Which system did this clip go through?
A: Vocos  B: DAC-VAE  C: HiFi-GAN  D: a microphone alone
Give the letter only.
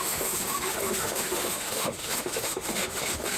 B